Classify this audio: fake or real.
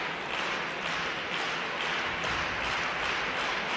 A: real